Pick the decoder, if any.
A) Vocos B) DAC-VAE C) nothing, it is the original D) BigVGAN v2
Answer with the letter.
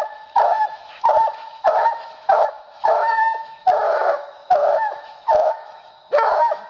B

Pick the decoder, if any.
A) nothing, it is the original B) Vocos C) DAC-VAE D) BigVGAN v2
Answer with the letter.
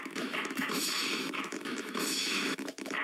C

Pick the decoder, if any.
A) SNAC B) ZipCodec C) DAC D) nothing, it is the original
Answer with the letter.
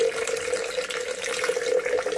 D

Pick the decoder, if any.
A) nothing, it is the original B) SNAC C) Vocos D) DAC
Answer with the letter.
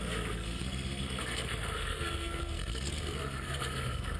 B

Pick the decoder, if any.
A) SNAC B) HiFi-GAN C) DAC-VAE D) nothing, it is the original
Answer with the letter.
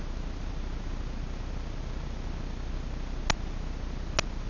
D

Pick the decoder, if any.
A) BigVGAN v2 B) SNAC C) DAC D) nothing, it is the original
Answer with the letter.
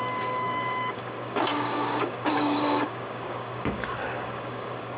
C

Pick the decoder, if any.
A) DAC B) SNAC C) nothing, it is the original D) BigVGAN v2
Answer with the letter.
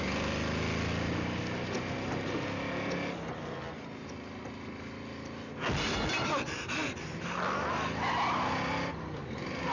C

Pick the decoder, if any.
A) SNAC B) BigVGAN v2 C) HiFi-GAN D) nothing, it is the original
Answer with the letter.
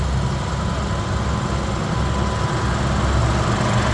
D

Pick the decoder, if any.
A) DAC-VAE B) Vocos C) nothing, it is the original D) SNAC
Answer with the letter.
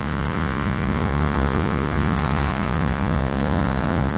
B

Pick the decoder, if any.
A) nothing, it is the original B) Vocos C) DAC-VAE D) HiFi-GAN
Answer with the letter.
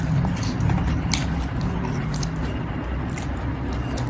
A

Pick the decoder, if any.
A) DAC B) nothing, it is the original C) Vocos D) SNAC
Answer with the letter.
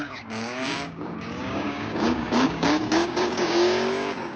A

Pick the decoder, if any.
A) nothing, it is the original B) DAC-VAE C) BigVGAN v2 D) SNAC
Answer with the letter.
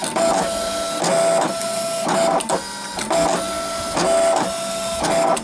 A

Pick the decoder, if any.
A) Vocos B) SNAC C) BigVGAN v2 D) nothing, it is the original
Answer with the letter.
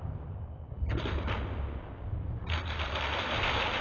D